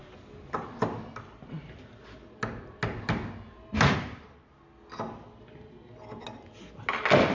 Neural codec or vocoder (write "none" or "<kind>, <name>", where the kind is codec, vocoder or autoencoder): none